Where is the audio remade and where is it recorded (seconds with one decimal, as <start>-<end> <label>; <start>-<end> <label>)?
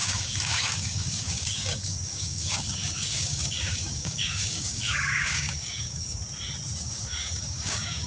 0.0-6.2 remade; 6.2-6.8 recorded; 6.8-8.1 remade